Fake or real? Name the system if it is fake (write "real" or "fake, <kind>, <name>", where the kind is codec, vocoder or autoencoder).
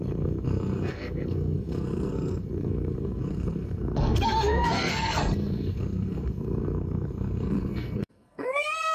fake, codec, SNAC